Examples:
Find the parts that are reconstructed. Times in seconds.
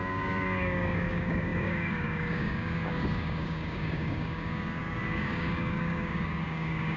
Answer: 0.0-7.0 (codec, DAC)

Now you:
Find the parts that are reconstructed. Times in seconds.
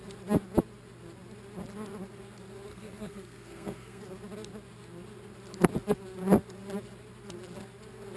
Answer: 2.7-4.0 (codec, SNAC)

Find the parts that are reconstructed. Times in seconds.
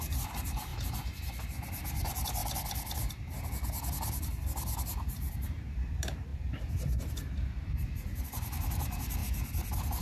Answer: 0.0-0.7 (vocoder, BigVGAN v2); 1.4-2.4; 4.8-9.2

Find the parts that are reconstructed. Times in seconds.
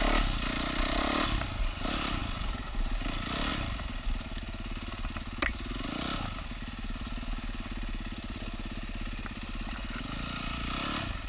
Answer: none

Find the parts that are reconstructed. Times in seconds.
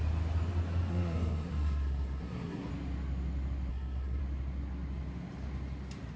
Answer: 0.9-2.7 (codec, SNAC); 3.7-4.2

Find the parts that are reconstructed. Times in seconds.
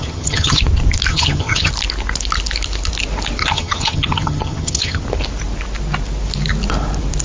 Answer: 0.0-0.6 (vocoder, HiFi-GAN); 1.1-1.7; 3.4-5.0